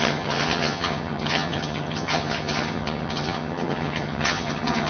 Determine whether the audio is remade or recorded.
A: remade